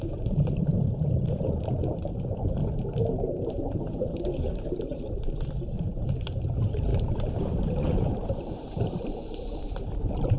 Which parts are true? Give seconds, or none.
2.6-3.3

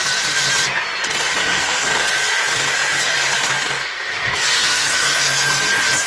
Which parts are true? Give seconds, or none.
0.0-1.4; 2.1-3.8; 5.6-6.1